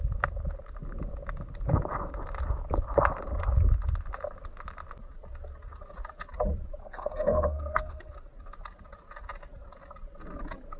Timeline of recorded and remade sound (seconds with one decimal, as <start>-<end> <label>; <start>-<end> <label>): 0.0-6.8 recorded; 6.8-8.1 remade; 8.1-10.8 recorded